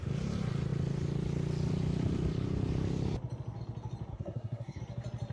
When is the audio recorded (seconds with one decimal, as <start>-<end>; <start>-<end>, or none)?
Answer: 0.0-4.1; 4.8-5.3